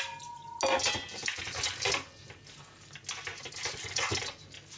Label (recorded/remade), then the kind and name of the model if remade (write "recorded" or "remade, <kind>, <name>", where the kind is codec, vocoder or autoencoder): recorded